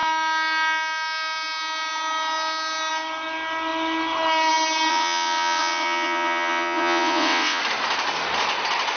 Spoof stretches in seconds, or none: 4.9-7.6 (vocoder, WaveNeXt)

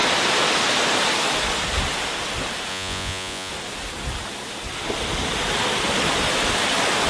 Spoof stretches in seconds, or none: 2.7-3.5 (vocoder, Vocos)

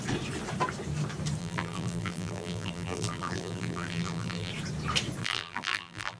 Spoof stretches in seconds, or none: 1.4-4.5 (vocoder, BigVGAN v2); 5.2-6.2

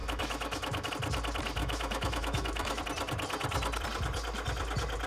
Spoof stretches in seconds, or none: 0.0-0.9 (autoencoder, DAC-VAE); 1.6-2.8

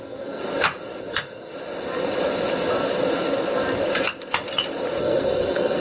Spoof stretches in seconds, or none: 0.0-0.4 (codec, SNAC); 1.0-1.5; 5.0-5.8